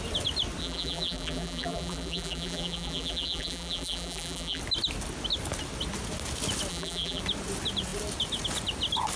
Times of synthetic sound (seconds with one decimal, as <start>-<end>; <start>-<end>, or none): 0.6-4.6; 6.7-7.2